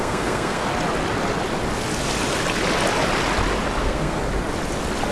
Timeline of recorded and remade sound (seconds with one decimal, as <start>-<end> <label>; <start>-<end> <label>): 0.0-0.7 remade; 0.7-3.8 recorded; 3.8-4.2 remade; 4.2-5.1 recorded